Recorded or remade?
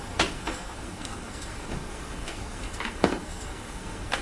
remade